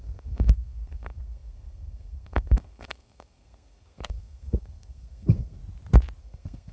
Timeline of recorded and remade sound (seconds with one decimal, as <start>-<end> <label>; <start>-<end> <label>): 0.0-5.6 remade; 5.6-6.2 recorded; 6.2-6.7 remade